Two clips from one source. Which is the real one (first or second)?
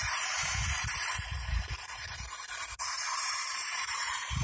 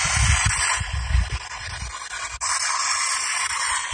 second